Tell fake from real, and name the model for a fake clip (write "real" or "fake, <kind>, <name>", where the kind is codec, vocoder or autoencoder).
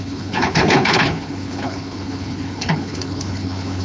fake, codec, HILCodec